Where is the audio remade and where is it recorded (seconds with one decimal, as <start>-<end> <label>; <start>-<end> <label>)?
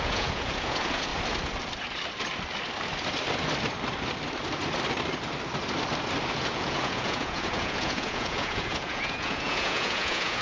0.0-1.1 remade; 1.1-6.3 recorded; 6.3-10.4 remade